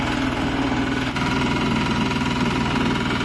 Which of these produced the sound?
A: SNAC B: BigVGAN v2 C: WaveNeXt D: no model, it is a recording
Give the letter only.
D